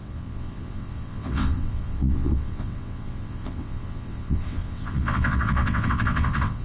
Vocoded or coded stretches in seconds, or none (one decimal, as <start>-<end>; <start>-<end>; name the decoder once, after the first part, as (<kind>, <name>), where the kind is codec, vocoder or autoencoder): 0.0-6.6 (vocoder, WaveNeXt)